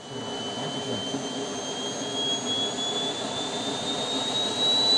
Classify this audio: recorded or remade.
recorded